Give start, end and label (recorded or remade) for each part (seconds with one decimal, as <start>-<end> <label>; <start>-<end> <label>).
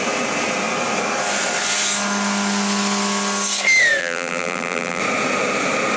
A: 0.0-4.0 recorded; 4.0-5.0 remade; 5.0-6.0 recorded